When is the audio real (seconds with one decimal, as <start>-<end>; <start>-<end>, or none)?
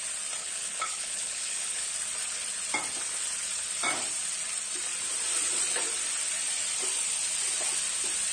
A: 0.0-0.4; 1.9-8.3